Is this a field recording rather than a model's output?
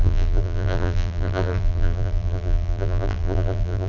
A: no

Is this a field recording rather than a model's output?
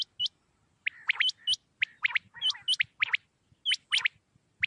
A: yes